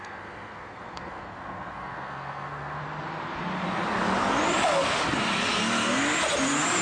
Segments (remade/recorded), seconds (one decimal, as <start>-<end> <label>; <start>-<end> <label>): 0.0-2.8 remade; 2.8-6.8 recorded